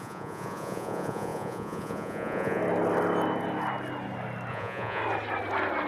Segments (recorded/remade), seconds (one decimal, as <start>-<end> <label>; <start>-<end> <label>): 0.0-2.6 remade; 2.6-4.5 recorded; 4.5-5.0 remade; 5.0-5.9 recorded